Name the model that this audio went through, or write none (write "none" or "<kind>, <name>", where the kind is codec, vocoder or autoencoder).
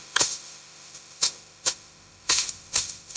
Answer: autoencoder, DAC-VAE